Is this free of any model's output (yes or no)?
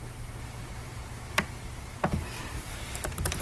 yes